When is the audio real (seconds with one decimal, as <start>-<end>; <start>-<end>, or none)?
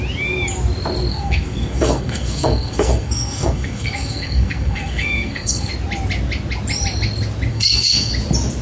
0.0-1.1; 5.7-7.5; 8.1-8.6